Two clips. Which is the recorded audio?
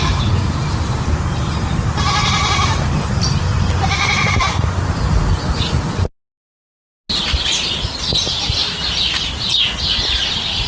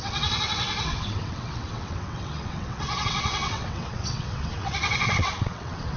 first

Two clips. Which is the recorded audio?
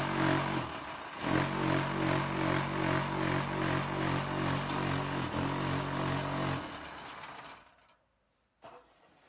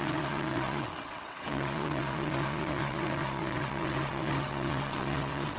first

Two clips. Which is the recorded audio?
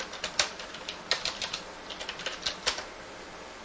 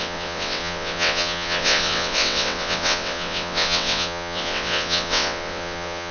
first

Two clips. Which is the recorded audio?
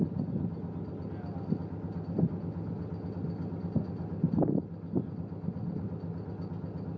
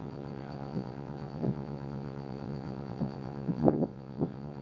first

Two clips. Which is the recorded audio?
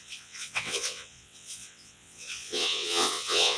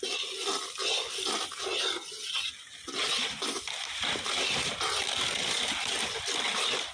second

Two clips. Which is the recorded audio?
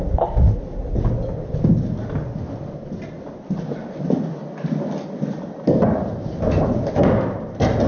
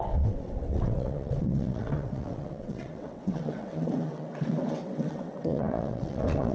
first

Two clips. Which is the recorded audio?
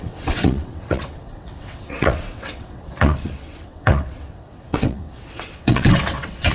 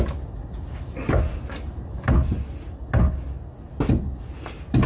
second